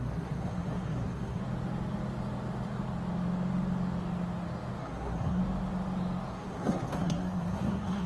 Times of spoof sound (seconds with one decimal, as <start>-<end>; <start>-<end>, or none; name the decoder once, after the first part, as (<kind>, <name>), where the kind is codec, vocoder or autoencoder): 0.0-1.4 (codec, SNAC); 4.8-5.4; 6.3-8.1